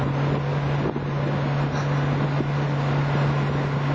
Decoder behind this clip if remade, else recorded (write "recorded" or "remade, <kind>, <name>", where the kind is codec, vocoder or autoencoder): recorded